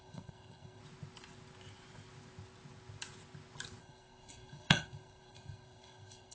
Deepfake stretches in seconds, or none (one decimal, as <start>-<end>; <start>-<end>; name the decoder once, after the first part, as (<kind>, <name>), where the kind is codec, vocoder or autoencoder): 0.0-0.8 (codec, SNAC); 3.8-6.3